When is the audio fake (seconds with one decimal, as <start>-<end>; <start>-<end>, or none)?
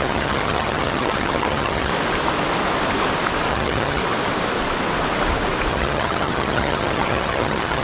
0.0-1.9; 3.5-4.0; 5.7-7.8